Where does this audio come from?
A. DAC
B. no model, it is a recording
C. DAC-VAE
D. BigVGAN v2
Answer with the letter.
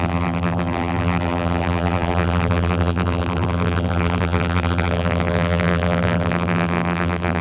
D